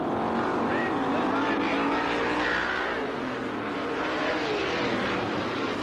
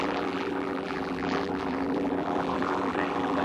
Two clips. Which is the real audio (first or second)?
first